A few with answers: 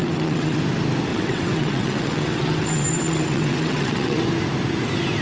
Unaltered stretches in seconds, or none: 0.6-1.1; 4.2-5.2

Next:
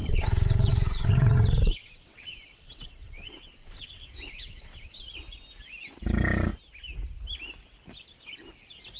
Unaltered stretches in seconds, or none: 5.0-9.0

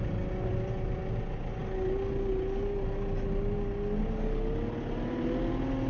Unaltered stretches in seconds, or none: 0.0-5.9

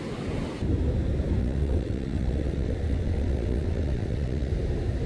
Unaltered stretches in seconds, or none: 0.0-1.4; 4.5-5.1

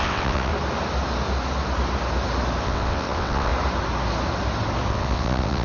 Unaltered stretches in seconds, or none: 0.5-2.6; 3.5-4.9